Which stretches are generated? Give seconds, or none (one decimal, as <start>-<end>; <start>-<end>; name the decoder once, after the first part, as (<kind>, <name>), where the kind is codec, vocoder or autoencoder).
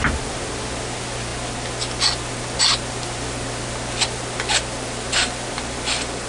none